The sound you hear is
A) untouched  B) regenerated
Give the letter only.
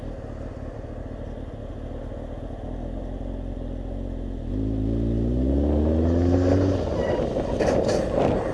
A